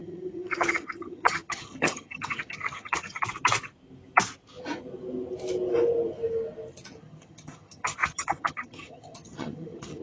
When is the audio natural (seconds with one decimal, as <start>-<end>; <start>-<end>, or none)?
3.2-6.9